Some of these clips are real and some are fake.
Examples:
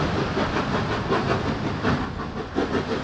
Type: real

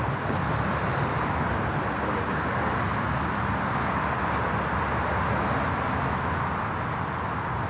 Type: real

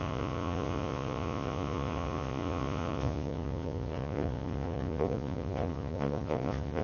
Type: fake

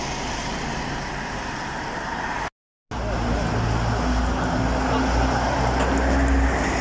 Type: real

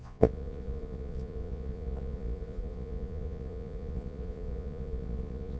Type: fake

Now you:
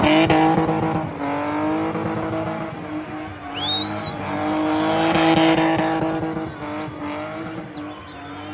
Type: real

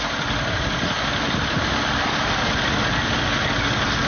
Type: real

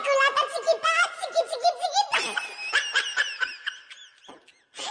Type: real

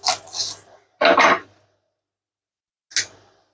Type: real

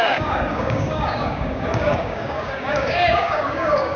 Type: fake